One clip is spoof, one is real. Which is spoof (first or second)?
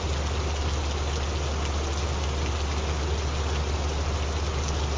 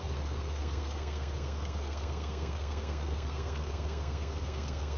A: second